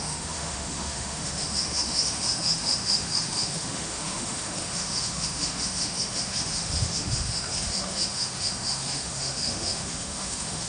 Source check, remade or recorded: remade